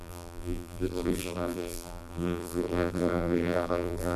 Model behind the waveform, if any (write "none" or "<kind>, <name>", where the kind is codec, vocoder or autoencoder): vocoder, BigVGAN v2